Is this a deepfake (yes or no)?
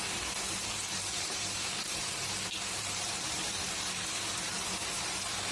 yes